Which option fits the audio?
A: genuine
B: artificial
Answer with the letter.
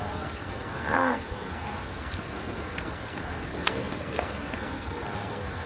B